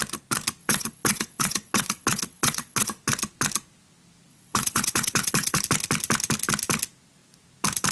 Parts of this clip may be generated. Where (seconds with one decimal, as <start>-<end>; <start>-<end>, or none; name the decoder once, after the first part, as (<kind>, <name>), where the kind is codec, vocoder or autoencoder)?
0.6-2.9 (vocoder, WaveNeXt); 4.3-5.6